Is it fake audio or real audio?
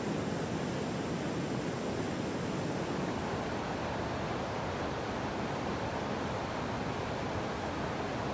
real